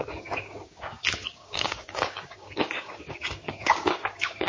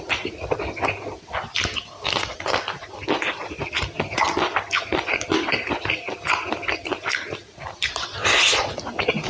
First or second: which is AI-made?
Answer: first